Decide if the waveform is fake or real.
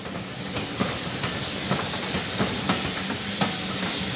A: real